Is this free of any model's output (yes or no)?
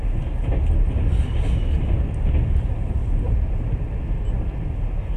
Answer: yes